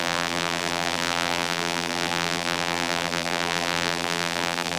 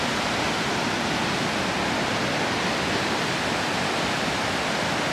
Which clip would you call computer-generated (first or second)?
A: first